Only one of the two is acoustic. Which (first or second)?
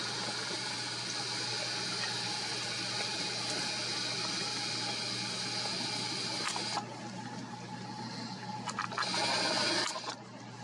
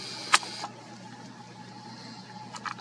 second